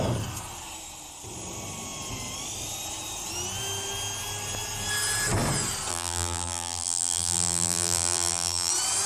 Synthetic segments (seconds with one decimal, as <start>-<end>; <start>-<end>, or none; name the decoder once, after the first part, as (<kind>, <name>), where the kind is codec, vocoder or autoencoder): 5.9-8.7 (vocoder, BigVGAN v2)